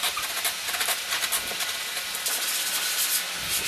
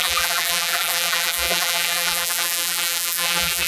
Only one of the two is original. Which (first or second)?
first